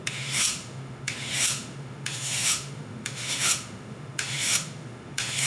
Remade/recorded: remade